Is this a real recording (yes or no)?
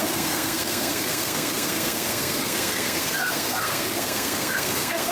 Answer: no